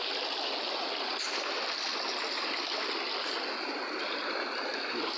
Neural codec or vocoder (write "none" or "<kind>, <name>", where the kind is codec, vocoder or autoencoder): none